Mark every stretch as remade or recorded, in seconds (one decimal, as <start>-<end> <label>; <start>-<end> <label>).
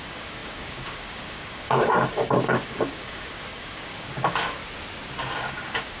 0.0-4.6 remade; 4.6-5.5 recorded; 5.5-6.0 remade